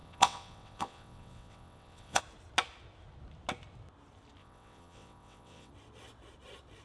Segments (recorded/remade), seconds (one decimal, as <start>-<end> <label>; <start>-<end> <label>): 0.0-2.2 remade; 2.2-4.4 recorded; 4.4-5.7 remade; 5.7-6.8 recorded